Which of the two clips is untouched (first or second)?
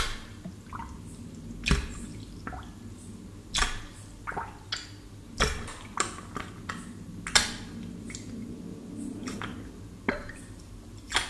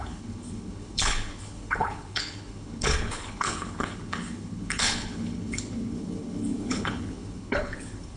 first